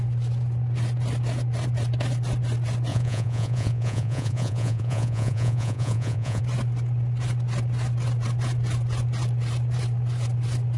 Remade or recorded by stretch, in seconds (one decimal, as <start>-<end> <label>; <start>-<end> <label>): 0.0-2.9 recorded; 2.9-6.4 remade; 6.4-10.8 recorded